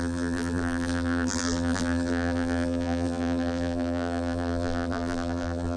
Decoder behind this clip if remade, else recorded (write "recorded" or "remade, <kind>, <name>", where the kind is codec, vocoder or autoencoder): remade, vocoder, BigVGAN v2